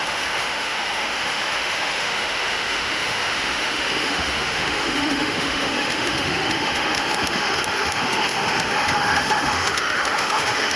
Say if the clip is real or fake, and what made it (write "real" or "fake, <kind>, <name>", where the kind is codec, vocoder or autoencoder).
fake, autoencoder, DAC-VAE